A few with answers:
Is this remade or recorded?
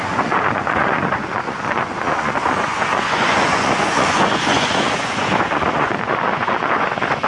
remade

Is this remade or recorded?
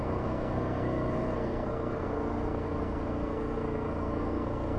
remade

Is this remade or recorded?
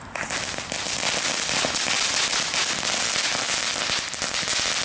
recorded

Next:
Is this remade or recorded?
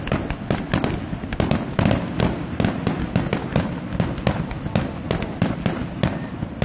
recorded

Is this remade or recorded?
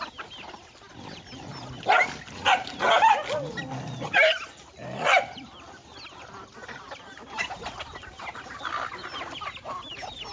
recorded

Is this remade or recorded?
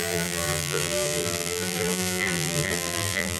remade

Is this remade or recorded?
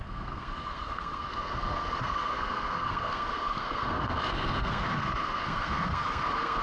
remade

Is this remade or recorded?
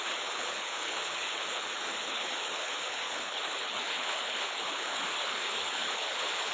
remade